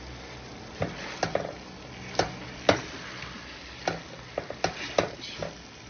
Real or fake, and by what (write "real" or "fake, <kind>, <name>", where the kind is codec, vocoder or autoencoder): real